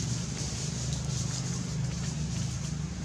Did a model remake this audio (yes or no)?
no